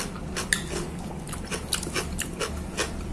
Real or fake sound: real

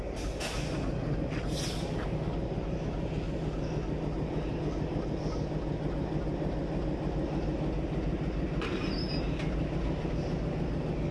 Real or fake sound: real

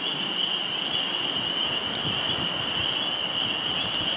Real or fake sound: real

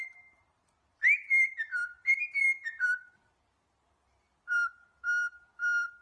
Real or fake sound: real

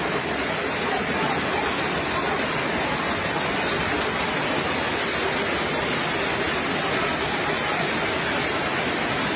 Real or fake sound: real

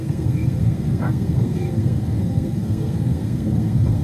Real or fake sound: fake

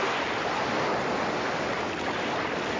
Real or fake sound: real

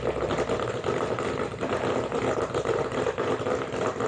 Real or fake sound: real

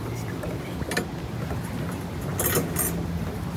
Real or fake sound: real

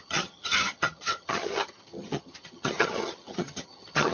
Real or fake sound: fake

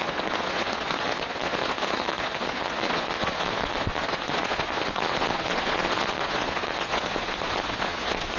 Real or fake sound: fake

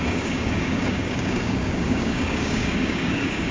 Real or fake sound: fake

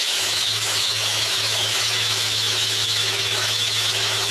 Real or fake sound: fake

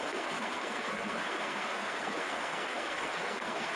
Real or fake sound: fake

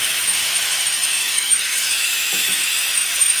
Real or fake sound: fake